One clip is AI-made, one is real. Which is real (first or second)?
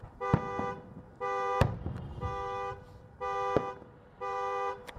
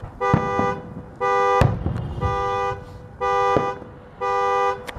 second